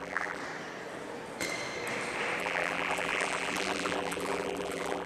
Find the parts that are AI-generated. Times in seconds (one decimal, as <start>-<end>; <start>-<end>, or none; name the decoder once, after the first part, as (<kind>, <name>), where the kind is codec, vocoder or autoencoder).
0.0-0.4 (vocoder, BigVGAN v2); 2.4-5.1